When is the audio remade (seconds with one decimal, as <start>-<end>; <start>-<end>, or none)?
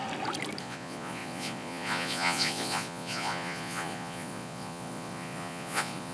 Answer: 0.6-6.1